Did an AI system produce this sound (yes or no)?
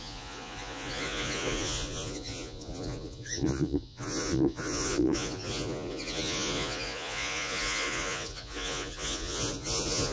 yes